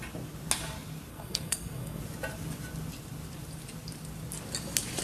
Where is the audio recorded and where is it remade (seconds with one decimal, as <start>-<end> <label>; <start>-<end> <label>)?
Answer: 0.0-1.1 recorded; 1.1-2.0 remade; 2.0-5.0 recorded